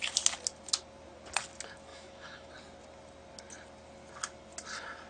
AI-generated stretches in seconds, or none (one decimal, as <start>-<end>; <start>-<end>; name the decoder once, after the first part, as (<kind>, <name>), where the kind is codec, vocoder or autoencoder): 1.9-2.5 (autoencoder, DAC-VAE)